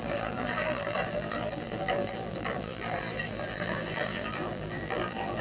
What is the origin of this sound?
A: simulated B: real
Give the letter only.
A